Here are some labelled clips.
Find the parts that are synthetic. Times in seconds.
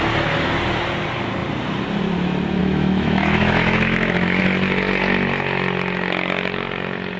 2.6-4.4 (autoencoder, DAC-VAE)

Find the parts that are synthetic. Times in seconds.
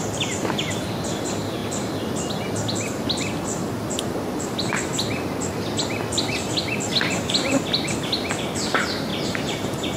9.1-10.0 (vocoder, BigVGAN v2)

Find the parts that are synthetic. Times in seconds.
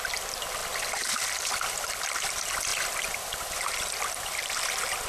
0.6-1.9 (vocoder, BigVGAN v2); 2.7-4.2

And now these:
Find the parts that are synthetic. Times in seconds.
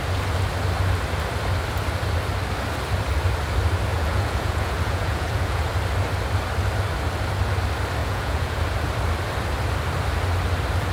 3.9-5.7 (vocoder, Vocos); 8.0-8.6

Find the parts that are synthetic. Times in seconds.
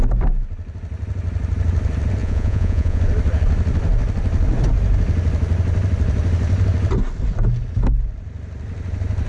2.2-3.0 (vocoder, Vocos)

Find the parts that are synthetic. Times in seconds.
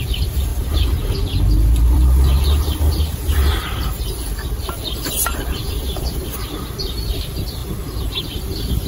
0.0-0.5 (vocoder, BigVGAN v2); 1.4-8.9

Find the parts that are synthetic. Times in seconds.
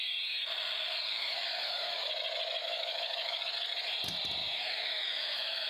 1.1-2.1 (autoencoder, DAC-VAE); 2.6-3.4; 4.4-5.7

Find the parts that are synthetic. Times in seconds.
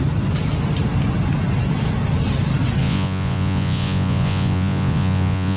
2.8-5.6 (vocoder, Vocos)